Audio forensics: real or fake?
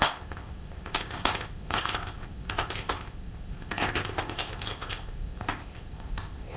fake